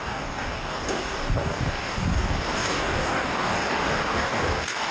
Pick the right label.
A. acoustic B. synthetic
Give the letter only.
B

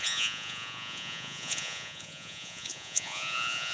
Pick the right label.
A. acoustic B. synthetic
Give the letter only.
B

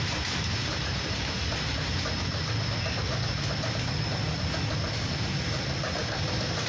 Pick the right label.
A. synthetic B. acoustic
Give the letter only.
B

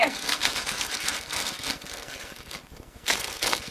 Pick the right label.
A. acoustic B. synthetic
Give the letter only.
B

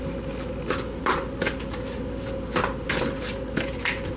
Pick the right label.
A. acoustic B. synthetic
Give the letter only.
A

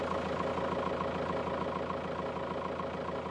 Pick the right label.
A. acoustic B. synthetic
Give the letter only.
A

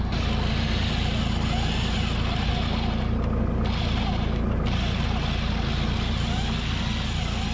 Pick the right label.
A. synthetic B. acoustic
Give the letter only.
B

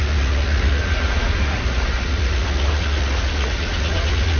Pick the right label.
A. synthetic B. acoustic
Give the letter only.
A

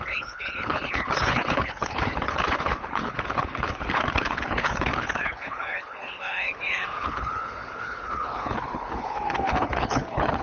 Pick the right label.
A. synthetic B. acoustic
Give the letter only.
A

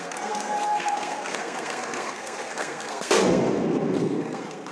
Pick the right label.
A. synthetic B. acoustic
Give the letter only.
A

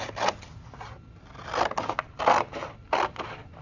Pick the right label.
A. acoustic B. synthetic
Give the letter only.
A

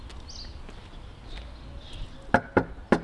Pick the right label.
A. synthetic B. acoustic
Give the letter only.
B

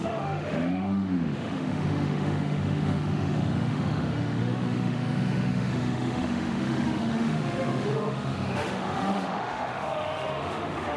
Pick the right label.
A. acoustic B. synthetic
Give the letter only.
B